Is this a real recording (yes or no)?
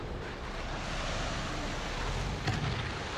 yes